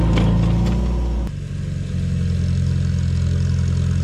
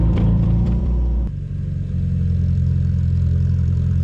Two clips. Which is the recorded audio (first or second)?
first